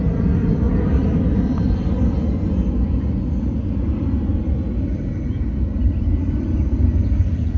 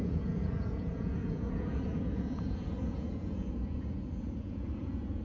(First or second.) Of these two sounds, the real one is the first